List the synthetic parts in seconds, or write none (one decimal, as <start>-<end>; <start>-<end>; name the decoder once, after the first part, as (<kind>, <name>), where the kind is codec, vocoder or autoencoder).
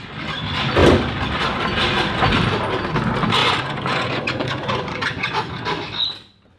3.4-5.6 (vocoder, Vocos)